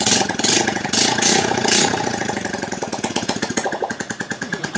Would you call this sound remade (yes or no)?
yes